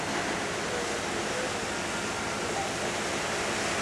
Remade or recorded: recorded